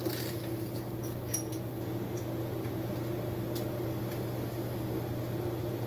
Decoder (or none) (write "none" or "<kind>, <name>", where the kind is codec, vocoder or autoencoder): none